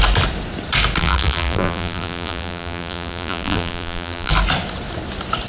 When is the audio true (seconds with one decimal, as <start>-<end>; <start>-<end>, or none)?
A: 0.0-1.0; 4.3-5.5